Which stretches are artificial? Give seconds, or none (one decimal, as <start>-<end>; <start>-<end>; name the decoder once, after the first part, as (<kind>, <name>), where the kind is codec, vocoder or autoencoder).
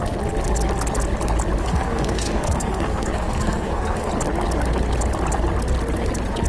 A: 1.6-4.1 (codec, SNAC)